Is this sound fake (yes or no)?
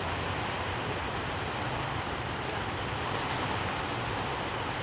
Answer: no